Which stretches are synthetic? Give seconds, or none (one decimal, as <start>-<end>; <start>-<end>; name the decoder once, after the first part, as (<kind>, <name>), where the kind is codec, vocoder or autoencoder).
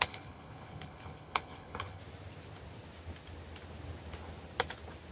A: 0.0-2.0 (codec, HILCodec)